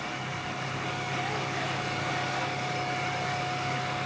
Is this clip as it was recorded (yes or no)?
no